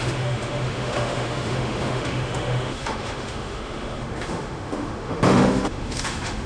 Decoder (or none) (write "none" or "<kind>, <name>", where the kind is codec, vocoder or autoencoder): autoencoder, DAC-VAE